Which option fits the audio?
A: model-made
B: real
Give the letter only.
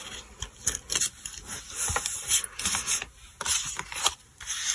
B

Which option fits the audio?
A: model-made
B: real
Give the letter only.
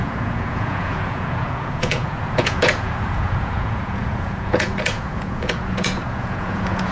A